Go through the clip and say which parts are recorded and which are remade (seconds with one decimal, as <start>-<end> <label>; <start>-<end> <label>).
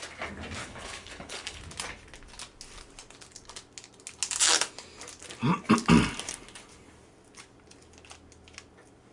0.0-0.6 recorded; 0.6-1.6 remade; 1.6-9.1 recorded